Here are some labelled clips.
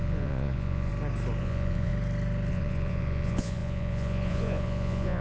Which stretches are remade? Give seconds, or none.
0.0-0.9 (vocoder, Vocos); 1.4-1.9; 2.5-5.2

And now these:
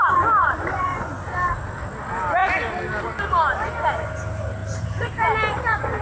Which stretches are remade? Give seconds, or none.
0.4-1.1 (vocoder, Vocos)

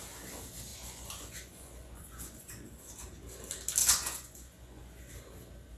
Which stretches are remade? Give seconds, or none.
0.7-2.9 (vocoder, Vocos); 3.8-5.1

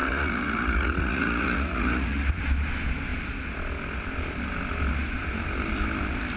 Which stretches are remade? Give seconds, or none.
0.0-2.4 (vocoder, Vocos)

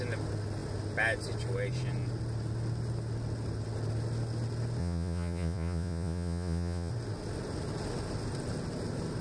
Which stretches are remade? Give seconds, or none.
4.8-6.9 (vocoder, Vocos)

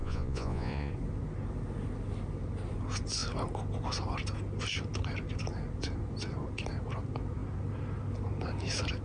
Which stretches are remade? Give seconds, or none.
0.0-0.9 (vocoder, Vocos)

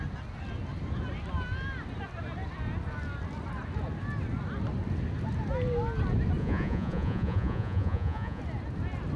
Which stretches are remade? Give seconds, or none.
6.4-8.4 (vocoder, Vocos)